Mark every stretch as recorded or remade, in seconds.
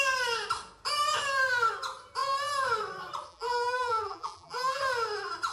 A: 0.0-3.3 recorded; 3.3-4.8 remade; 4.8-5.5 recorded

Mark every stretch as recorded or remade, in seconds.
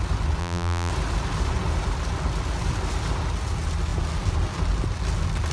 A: 0.0-0.4 recorded; 0.4-0.9 remade; 0.9-5.5 recorded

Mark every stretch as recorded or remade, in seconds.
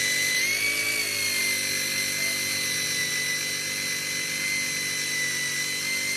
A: 0.0-6.2 recorded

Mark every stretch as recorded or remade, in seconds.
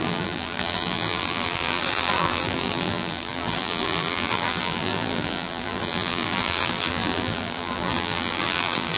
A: 0.0-9.0 remade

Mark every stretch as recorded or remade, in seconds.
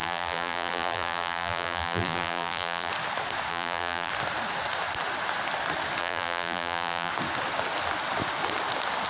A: 0.0-2.9 remade; 2.9-3.5 recorded; 3.5-4.1 remade; 4.1-6.0 recorded; 6.0-7.1 remade; 7.1-9.1 recorded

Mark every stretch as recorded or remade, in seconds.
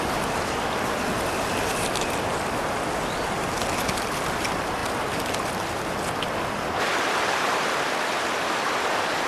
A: 0.0-9.3 remade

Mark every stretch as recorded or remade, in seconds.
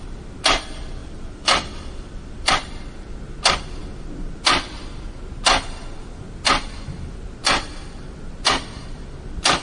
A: 0.0-1.0 recorded; 1.0-2.7 remade; 2.7-9.6 recorded